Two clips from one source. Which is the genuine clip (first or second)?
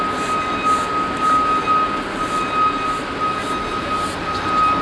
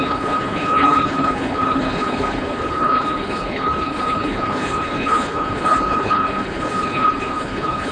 first